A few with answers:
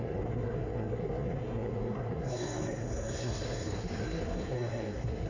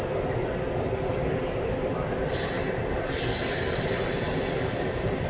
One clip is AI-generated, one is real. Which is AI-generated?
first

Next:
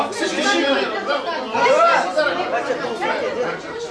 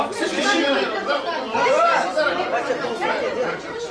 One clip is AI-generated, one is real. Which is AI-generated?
second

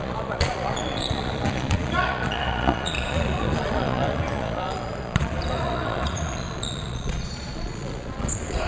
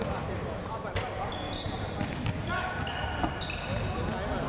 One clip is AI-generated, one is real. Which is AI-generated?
first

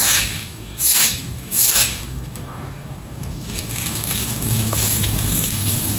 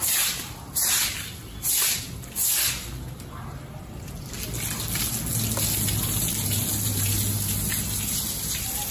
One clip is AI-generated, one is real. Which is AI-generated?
first